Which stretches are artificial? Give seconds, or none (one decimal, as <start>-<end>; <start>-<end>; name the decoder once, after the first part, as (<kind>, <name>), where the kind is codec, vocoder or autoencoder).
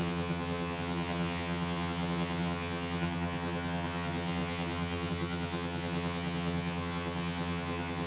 0.0-8.1 (vocoder, HiFi-GAN)